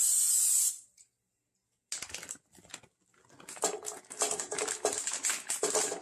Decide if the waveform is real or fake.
real